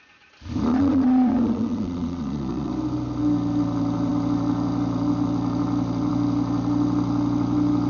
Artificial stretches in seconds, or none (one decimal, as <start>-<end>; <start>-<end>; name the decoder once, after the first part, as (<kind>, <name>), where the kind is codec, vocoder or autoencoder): 0.7-2.7 (vocoder, Vocos)